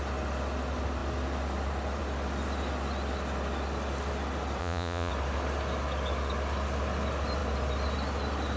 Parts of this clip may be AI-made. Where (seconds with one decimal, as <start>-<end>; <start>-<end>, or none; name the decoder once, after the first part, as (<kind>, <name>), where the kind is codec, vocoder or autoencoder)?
4.6-5.1 (vocoder, Vocos)

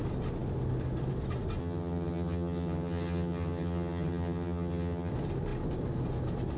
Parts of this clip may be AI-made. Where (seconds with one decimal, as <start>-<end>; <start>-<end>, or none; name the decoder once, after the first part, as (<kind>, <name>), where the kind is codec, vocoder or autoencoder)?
1.6-5.1 (vocoder, HiFi-GAN)

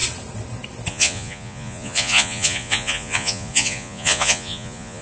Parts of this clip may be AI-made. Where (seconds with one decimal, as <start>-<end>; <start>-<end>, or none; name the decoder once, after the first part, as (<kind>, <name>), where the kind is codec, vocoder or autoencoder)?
0.9-5.0 (vocoder, Vocos)